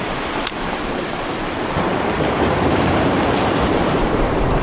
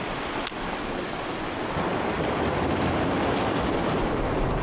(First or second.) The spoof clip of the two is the first